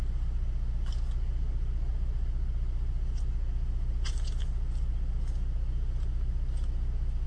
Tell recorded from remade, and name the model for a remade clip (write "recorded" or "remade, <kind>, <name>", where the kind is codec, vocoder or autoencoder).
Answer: recorded